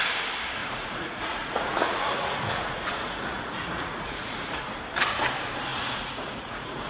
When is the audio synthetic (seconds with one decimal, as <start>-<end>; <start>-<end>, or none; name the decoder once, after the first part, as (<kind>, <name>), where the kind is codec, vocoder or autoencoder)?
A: 0.6-4.6 (vocoder, Vocos); 5.7-6.9